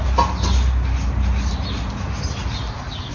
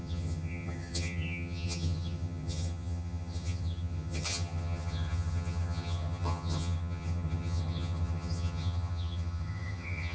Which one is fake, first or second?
second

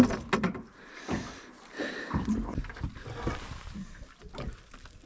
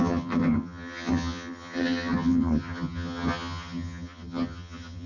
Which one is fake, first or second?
second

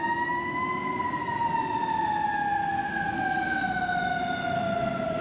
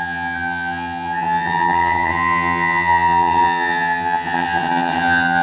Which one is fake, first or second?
second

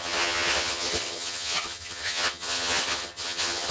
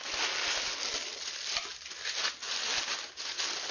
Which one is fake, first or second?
first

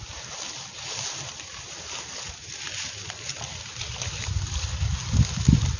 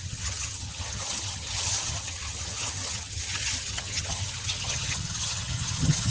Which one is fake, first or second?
second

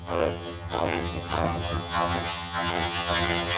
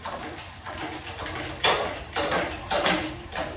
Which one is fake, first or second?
first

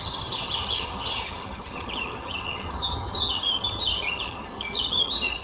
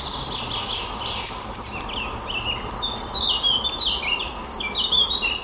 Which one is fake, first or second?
first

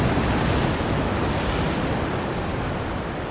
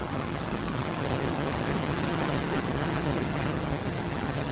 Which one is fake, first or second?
second